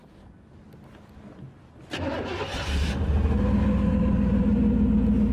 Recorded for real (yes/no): yes